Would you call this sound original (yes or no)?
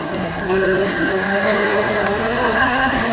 no